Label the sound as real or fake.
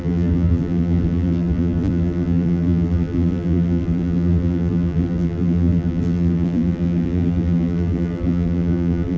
fake